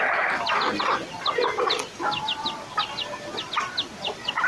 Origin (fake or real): real